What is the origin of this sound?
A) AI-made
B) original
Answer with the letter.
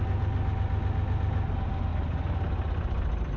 B